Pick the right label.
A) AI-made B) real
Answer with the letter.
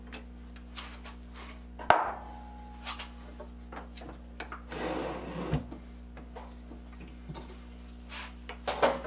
B